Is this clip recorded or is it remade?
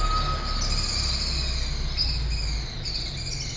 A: recorded